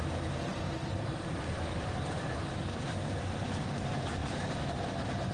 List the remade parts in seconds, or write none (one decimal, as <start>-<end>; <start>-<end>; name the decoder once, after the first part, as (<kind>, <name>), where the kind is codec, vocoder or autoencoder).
0.5-3.7 (vocoder, BigVGAN v2); 4.2-5.3